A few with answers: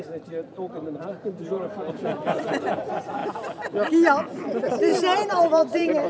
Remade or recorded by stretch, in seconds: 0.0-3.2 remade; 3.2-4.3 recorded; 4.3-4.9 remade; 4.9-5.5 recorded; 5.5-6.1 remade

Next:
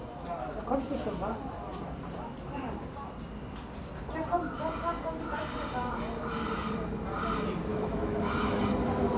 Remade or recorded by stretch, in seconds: 0.0-7.7 recorded; 7.7-8.6 remade; 8.6-9.2 recorded

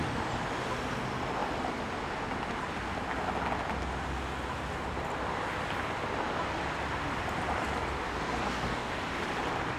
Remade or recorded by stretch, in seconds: 0.0-8.4 recorded; 8.4-8.9 remade; 8.9-9.8 recorded

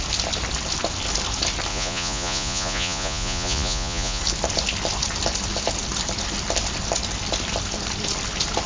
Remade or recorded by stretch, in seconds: 0.0-1.7 recorded; 1.7-4.2 remade; 4.2-8.7 recorded